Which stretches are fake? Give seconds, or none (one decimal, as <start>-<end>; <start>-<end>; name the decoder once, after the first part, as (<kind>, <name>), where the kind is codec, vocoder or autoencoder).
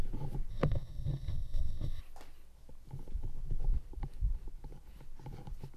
0.5-2.0 (codec, SNAC)